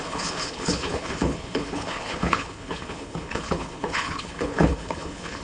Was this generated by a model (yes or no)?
yes